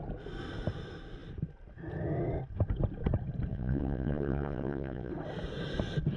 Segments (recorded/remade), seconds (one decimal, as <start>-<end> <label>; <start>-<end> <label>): 0.0-3.5 recorded; 3.5-5.1 remade; 5.1-6.2 recorded